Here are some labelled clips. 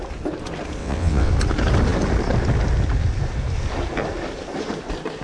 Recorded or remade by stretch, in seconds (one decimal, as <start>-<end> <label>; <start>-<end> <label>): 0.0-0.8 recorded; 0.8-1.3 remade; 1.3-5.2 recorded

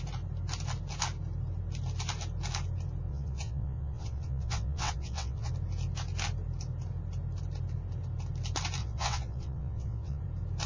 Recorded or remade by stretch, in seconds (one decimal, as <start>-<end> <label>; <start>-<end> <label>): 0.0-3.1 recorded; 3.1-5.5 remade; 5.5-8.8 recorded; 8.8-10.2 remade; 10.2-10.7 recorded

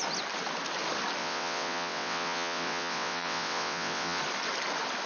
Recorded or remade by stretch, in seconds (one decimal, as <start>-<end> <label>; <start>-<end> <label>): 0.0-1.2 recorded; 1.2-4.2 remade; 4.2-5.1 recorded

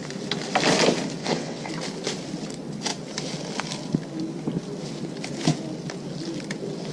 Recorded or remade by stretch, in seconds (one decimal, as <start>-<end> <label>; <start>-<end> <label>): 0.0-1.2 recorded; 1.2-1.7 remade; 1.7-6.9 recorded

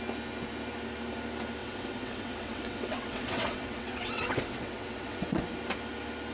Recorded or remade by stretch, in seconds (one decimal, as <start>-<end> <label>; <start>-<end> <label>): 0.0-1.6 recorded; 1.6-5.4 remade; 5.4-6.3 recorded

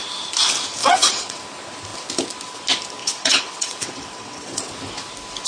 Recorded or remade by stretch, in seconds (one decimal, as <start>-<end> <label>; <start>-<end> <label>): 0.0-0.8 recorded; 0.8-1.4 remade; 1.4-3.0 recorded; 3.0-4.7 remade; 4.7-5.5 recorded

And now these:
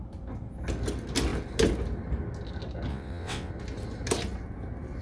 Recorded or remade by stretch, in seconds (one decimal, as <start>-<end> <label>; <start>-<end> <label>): 0.0-2.9 recorded; 2.9-3.5 remade; 3.5-5.0 recorded